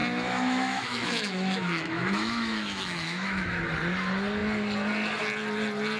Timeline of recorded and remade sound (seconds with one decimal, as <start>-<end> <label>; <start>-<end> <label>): 0.0-3.6 remade; 3.6-6.0 recorded